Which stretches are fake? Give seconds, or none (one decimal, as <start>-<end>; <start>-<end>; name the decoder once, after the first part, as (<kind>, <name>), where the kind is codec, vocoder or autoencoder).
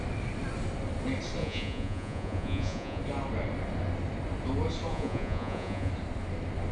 1.4-3.0 (vocoder, Vocos); 4.9-5.9